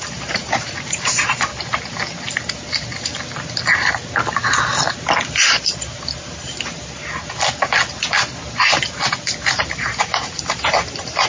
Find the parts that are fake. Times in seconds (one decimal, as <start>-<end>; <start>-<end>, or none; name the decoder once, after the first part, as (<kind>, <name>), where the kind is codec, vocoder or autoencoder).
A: 0.0-1.5 (vocoder, BigVGAN v2); 2.7-3.1; 5.4-7.0; 9.4-11.3